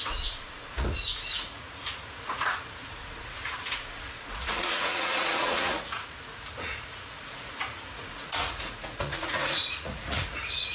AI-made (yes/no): yes